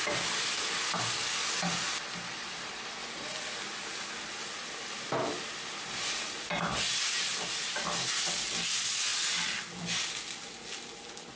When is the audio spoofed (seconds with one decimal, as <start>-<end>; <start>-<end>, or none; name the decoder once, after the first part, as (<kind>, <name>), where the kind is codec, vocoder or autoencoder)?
none